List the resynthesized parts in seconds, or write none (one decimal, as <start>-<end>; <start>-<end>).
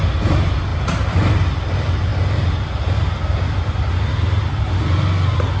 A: none